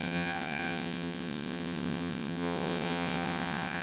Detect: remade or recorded remade